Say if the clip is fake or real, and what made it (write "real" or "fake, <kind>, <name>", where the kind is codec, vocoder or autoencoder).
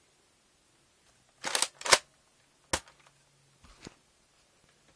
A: real